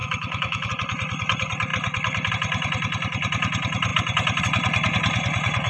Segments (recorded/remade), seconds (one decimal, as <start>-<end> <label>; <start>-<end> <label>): 0.0-0.7 remade; 0.7-5.7 recorded